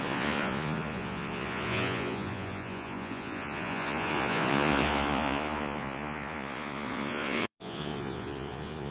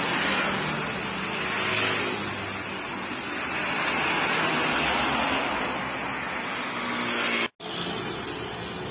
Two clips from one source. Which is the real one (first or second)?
second